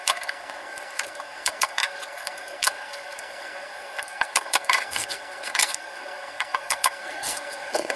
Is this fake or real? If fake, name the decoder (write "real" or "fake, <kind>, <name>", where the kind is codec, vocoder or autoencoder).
fake, codec, SNAC